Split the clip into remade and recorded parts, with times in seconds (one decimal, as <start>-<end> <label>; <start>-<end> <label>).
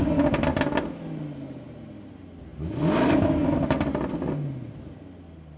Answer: 0.0-5.6 recorded